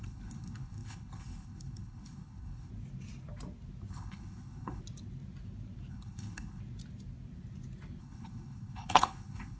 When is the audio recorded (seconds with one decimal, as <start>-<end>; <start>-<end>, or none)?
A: 2.7-3.9; 4.8-5.9; 6.6-8.0